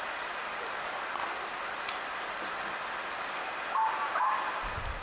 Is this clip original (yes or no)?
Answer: yes